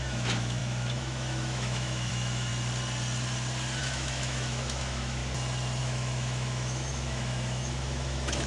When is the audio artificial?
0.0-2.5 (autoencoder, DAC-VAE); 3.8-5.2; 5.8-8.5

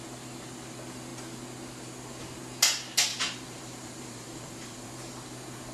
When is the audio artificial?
3.1-4.9 (vocoder, BigVGAN v2)

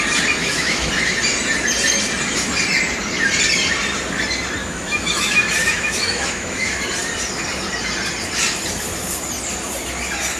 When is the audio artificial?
0.4-0.9 (autoencoder, DAC-VAE); 4.6-6.8

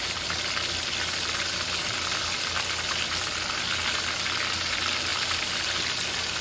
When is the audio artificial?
none

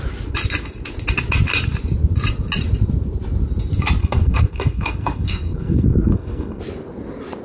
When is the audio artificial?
4.0-6.6 (codec, SNAC)